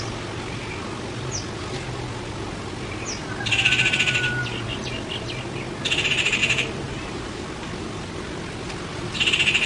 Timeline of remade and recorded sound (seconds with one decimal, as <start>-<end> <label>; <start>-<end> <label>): 0.0-6.4 recorded; 6.4-7.5 remade; 7.5-9.7 recorded